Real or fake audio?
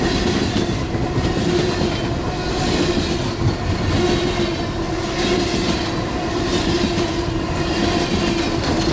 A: real